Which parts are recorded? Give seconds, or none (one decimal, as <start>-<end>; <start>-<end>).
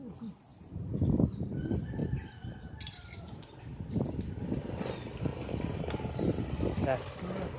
0.0-7.6